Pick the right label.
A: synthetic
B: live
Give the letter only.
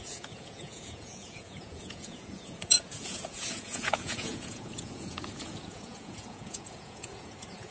A